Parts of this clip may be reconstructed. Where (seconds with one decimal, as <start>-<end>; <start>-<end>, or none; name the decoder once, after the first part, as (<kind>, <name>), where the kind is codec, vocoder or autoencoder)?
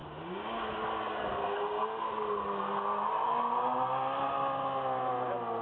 none